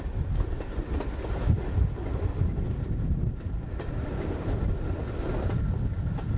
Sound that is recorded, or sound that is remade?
recorded